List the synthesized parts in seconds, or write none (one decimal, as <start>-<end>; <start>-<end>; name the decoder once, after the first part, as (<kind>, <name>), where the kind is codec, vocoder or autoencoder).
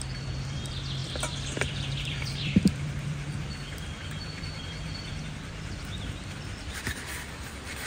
0.0-7.9 (vocoder, BigVGAN v2)